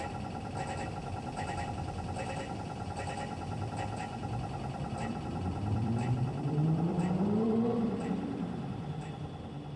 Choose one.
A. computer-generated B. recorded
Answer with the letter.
A